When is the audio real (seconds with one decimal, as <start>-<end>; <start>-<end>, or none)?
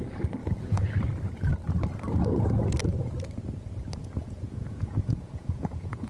0.0-0.4; 0.9-4.0